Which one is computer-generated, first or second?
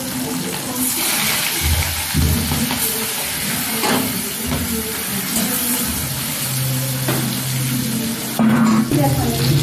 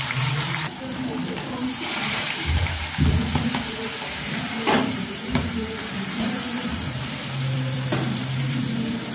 second